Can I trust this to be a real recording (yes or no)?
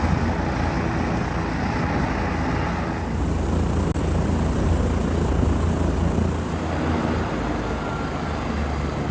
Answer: yes